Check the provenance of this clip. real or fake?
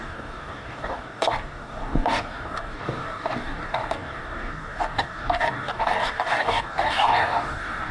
fake